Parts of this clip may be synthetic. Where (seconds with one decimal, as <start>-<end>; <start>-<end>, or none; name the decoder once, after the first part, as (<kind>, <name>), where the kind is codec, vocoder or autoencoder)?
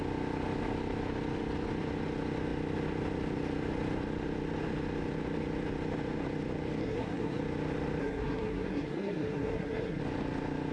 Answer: 6.8-7.4 (codec, SNAC); 8.0-10.0